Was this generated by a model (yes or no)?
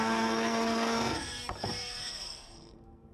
yes